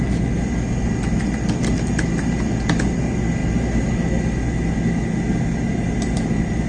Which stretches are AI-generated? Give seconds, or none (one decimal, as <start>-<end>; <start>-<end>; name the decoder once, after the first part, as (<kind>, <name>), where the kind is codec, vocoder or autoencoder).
none